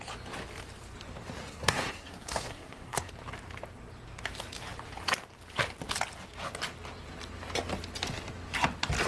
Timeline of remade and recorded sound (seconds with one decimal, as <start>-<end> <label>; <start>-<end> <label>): 0.0-1.4 recorded; 1.4-3.1 remade; 3.1-9.1 recorded